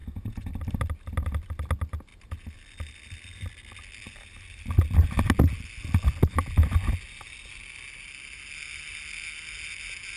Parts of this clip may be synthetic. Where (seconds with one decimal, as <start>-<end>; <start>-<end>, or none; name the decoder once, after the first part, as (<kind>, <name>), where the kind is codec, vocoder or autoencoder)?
0.0-0.5 (vocoder, Vocos)